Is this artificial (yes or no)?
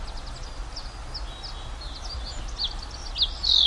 no